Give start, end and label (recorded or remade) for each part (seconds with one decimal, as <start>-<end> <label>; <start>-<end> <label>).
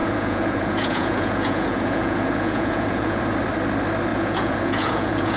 0.0-3.2 remade; 3.2-4.1 recorded; 4.1-5.4 remade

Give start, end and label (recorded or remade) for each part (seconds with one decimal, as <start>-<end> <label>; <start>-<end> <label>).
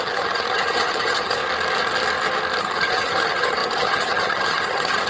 0.0-1.4 remade; 1.4-2.6 recorded; 2.6-5.1 remade